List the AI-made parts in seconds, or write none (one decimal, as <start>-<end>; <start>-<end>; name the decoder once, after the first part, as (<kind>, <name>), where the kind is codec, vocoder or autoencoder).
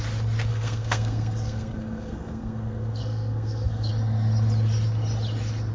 0.5-3.9 (codec, SNAC)